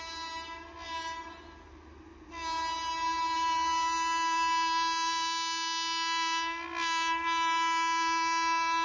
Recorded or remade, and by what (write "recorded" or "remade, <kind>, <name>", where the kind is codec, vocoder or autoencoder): recorded